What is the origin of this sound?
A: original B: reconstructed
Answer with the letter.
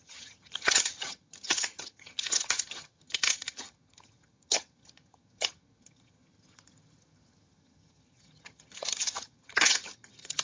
B